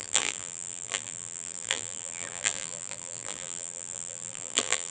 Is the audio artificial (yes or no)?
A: yes